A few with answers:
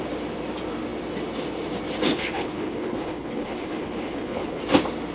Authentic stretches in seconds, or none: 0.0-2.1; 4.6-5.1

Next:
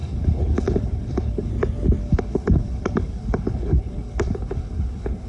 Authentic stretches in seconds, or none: 1.5-2.0

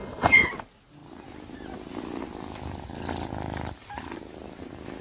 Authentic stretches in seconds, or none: 0.5-5.0

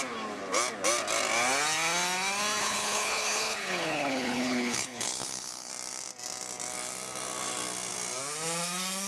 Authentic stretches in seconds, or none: 0.0-2.6; 5.7-9.1

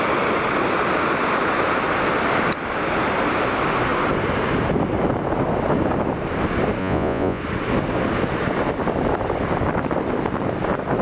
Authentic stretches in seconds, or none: 0.0-6.8; 7.4-11.0

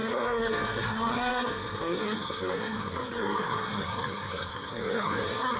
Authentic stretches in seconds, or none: none